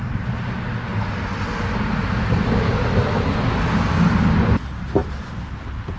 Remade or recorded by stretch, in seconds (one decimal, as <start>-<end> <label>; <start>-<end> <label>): 0.0-6.0 recorded